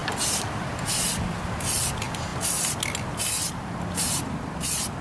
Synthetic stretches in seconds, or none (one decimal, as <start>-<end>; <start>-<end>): none